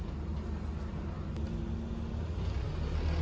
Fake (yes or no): no